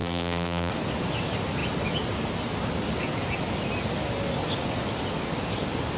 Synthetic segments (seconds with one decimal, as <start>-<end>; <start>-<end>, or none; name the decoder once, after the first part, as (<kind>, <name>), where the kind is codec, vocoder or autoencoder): 0.0-0.7 (vocoder, BigVGAN v2)